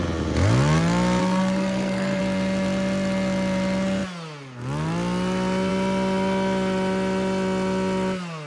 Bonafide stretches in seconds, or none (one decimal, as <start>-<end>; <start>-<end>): 0.0-1.2; 2.2-8.5